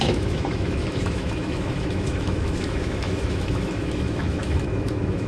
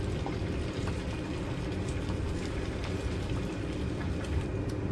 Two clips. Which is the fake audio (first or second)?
first